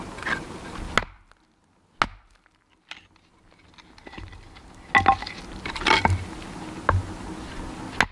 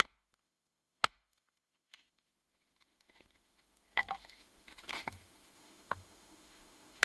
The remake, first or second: second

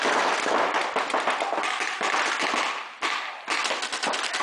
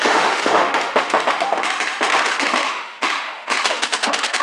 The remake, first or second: second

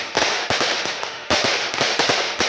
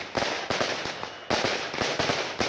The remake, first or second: first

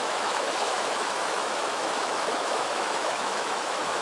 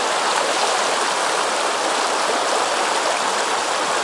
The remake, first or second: first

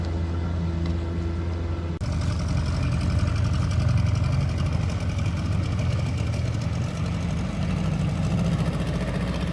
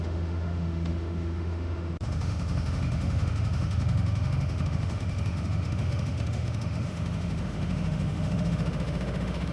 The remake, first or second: second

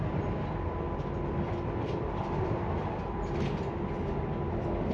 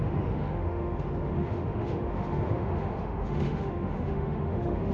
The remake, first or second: second